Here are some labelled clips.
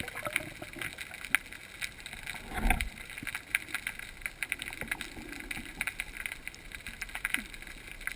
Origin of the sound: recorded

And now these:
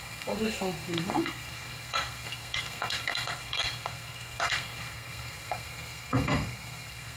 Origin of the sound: remade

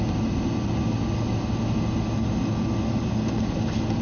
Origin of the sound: recorded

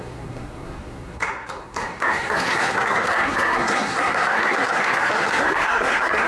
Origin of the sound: remade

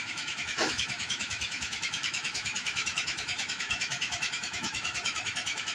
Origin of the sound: remade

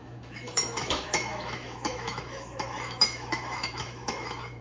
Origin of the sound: remade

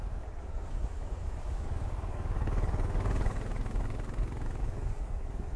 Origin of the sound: remade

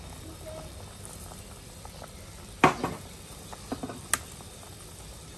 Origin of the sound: recorded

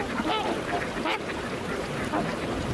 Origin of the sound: remade